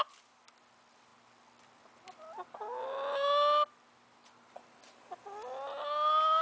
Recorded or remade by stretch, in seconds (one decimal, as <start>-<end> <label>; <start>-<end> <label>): 0.0-6.4 recorded

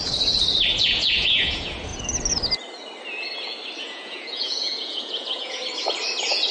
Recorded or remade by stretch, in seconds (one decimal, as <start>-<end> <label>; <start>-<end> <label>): 0.0-0.8 recorded; 0.8-1.9 remade; 1.9-3.8 recorded; 3.8-5.6 remade; 5.6-6.5 recorded

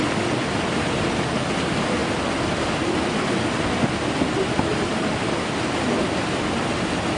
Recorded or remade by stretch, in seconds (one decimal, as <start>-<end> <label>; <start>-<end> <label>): 0.0-2.0 recorded; 2.0-3.5 remade; 3.5-4.7 recorded; 4.7-6.5 remade; 6.5-7.2 recorded

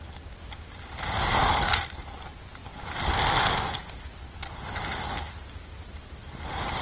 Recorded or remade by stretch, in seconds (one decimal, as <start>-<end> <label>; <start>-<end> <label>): 0.0-6.8 recorded